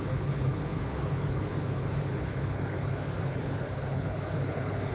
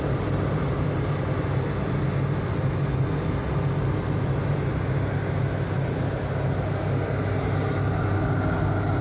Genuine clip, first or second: second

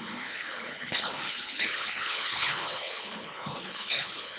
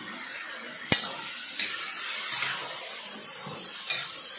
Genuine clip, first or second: second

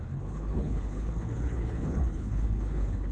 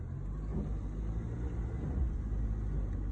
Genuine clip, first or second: second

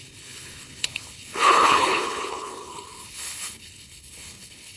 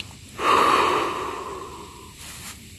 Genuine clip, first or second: second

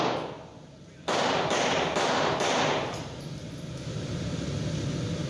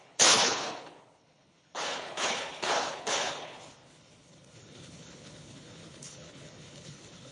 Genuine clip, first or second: first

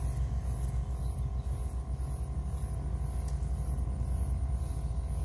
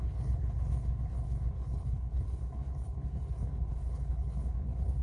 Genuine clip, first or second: first